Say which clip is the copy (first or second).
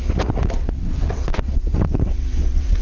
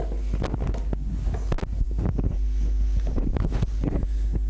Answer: first